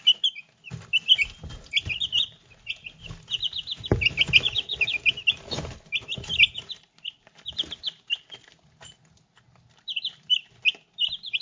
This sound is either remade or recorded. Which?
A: recorded